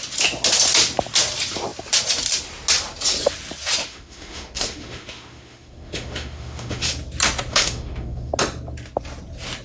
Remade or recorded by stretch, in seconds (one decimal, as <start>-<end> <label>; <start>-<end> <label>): 0.0-3.8 recorded; 3.8-6.9 remade; 6.9-7.5 recorded; 7.5-8.3 remade; 8.3-9.6 recorded